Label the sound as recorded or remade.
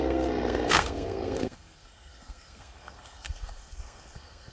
remade